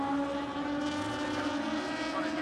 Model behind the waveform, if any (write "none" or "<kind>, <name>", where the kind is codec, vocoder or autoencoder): none